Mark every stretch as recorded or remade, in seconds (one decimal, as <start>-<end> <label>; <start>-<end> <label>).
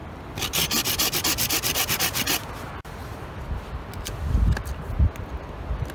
0.0-5.9 recorded